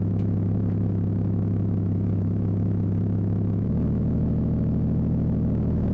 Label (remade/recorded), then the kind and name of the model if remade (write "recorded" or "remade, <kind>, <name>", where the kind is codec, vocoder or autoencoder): remade, autoencoder, DAC-VAE